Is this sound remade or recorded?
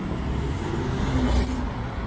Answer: recorded